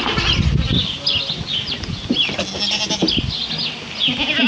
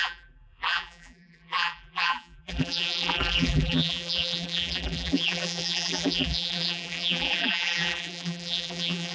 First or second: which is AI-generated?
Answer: second